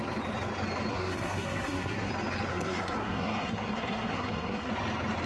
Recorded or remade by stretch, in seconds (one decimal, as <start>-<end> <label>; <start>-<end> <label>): 0.0-0.9 recorded; 0.9-2.1 remade; 2.1-2.5 recorded; 2.5-4.7 remade; 4.7-5.3 recorded